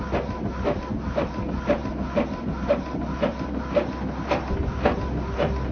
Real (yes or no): yes